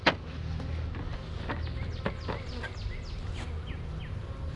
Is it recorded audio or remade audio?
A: recorded